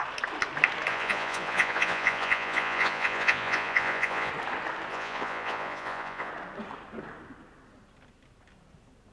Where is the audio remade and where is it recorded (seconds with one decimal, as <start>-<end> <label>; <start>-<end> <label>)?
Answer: 0.0-0.9 recorded; 0.9-4.3 remade; 4.3-4.9 recorded; 4.9-6.3 remade; 6.3-9.1 recorded